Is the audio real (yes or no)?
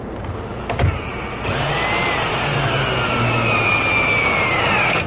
yes